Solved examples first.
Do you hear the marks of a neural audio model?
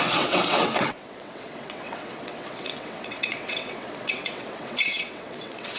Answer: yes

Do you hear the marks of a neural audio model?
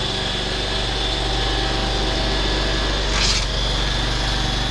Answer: no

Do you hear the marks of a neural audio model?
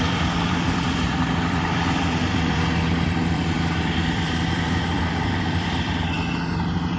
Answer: yes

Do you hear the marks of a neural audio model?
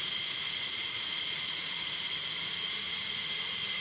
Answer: yes